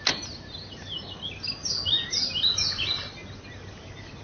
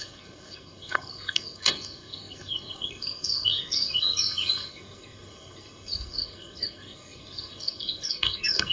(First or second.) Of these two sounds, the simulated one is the second